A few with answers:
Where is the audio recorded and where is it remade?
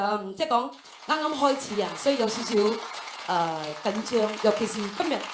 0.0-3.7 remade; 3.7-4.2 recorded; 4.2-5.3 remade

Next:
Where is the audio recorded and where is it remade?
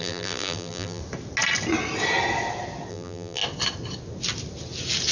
0.0-1.0 remade; 1.0-2.9 recorded; 2.9-3.4 remade; 3.4-5.1 recorded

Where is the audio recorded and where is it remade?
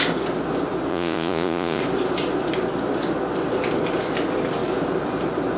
0.0-0.9 recorded; 0.9-1.8 remade; 1.8-5.6 recorded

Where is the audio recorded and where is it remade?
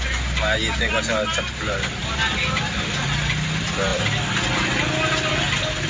0.0-5.9 recorded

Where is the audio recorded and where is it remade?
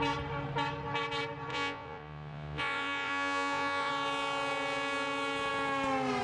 0.0-1.5 recorded; 1.5-3.9 remade; 3.9-6.2 recorded